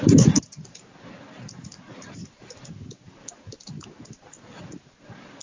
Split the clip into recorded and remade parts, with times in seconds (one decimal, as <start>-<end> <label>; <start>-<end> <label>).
0.0-5.4 recorded